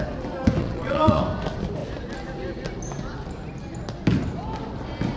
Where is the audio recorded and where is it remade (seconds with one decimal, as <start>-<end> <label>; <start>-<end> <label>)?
0.0-0.6 recorded; 0.6-1.2 remade; 1.2-5.2 recorded